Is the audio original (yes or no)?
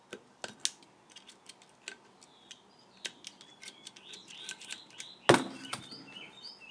yes